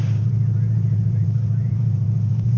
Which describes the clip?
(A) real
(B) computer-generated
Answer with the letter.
B